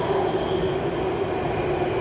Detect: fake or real real